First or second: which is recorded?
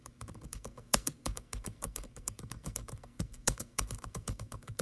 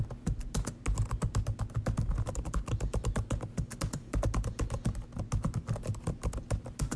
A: second